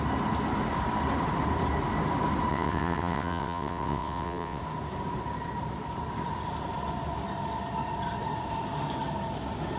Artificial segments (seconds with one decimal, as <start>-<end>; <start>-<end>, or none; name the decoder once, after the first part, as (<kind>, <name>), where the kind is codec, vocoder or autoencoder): 2.5-4.6 (vocoder, WaveNeXt)